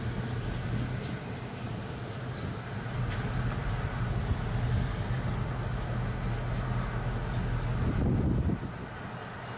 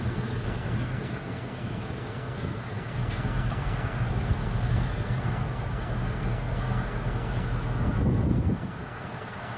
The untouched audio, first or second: first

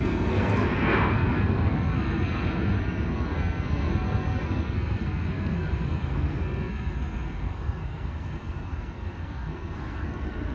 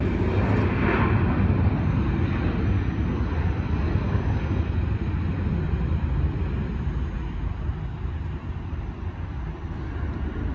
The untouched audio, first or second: second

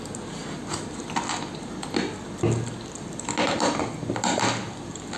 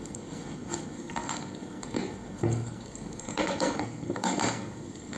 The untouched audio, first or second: first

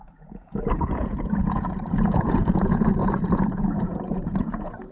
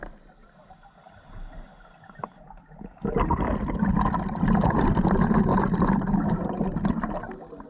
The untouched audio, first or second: second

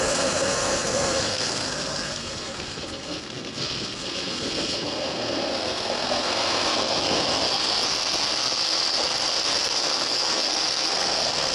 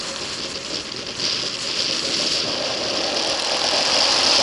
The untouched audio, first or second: second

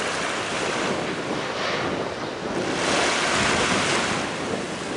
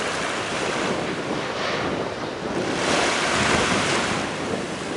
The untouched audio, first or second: first